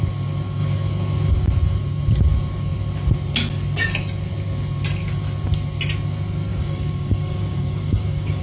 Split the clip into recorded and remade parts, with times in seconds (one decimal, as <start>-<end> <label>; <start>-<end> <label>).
0.0-6.5 recorded; 6.5-8.4 remade